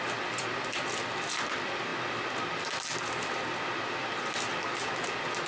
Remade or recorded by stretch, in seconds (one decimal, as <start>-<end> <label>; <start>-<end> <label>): 0.0-5.5 recorded